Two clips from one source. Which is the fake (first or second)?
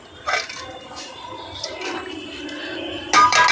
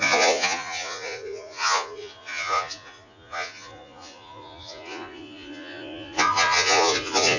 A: second